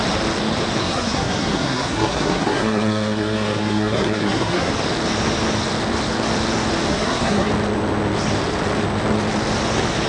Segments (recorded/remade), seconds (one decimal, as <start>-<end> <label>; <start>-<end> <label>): 0.0-0.8 recorded; 0.8-4.7 remade; 4.7-6.9 recorded; 6.9-7.5 remade; 7.5-10.1 recorded